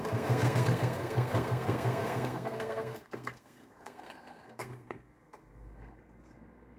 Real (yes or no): no